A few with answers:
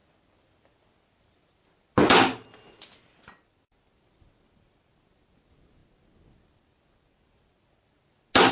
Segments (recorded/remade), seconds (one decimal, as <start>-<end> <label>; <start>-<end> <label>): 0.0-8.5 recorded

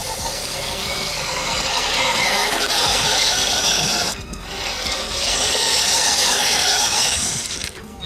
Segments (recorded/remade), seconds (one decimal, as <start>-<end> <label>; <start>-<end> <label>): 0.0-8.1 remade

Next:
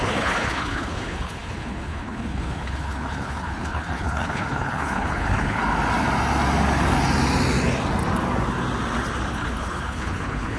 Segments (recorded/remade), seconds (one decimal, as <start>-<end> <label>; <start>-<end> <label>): 0.0-5.6 remade; 5.6-9.3 recorded; 9.3-10.6 remade

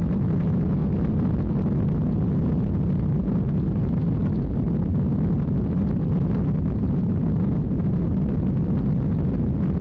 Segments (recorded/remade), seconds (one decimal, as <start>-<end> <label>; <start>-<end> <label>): 0.0-4.9 recorded; 4.9-9.0 remade; 9.0-9.8 recorded

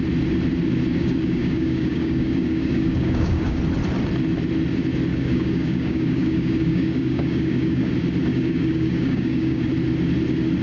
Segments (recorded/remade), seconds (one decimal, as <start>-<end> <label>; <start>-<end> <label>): 0.0-0.9 recorded; 0.9-3.6 remade; 3.6-5.1 recorded; 5.1-7.9 remade; 7.9-8.3 recorded; 8.3-9.6 remade; 9.6-10.6 recorded

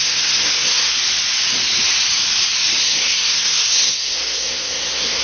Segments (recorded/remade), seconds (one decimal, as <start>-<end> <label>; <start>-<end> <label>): 0.0-0.9 remade; 0.9-2.8 recorded; 2.8-5.2 remade